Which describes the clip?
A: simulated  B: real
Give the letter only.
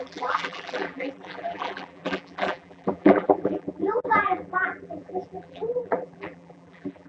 A